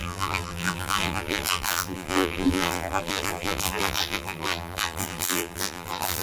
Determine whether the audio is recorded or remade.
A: remade